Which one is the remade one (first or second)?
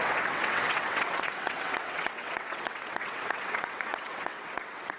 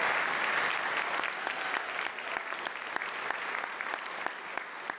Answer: first